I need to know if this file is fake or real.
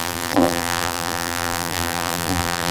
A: fake